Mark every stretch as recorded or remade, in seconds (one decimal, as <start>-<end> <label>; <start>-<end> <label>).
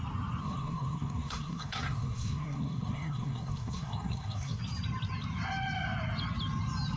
0.0-0.4 recorded; 0.4-4.6 remade; 4.6-7.0 recorded